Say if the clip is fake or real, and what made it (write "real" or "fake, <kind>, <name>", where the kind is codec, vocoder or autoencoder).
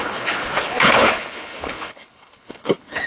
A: fake, codec, HILCodec